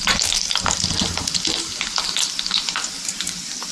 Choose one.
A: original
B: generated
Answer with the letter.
A